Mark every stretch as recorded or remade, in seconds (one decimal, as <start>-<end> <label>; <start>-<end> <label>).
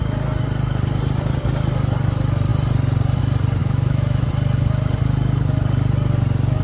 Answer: 0.0-3.6 recorded; 3.6-4.3 remade; 4.3-6.6 recorded